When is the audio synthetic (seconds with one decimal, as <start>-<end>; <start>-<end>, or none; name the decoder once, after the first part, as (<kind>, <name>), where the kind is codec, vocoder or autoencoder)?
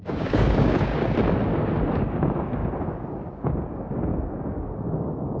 0.0-0.9 (codec, DAC); 2.0-2.6; 3.5-5.4